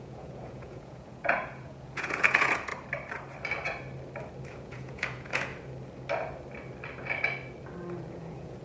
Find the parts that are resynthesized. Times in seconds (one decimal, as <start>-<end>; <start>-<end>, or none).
0.0-2.7; 4.5-5.5; 8.1-8.6